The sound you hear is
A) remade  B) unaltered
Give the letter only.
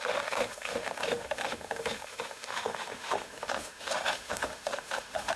A